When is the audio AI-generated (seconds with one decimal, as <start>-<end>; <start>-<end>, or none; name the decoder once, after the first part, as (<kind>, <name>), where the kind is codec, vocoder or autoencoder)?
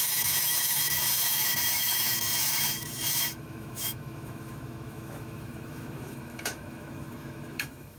0.0-8.0 (autoencoder, DAC-VAE)